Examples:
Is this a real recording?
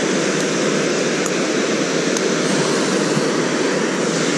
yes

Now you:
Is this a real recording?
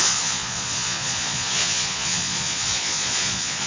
no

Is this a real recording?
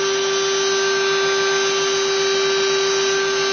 yes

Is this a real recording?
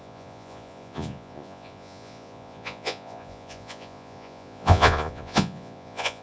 no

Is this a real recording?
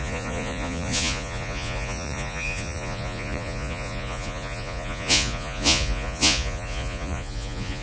no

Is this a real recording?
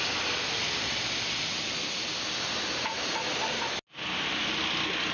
yes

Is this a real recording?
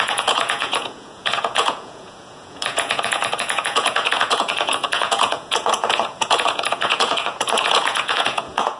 no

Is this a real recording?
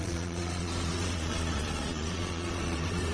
no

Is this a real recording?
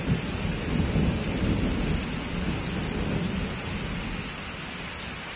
yes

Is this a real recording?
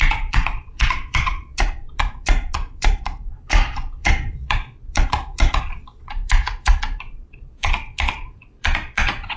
no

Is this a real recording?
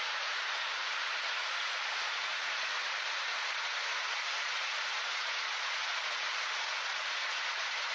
no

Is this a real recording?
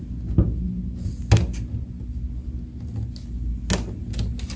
yes